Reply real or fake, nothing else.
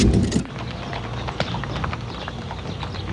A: real